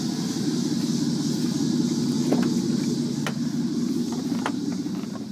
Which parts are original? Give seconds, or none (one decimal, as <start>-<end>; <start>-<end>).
0.9-4.1